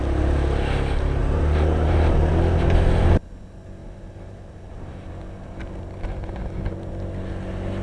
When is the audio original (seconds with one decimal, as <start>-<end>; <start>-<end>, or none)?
0.0-1.2; 2.3-3.8; 5.1-7.8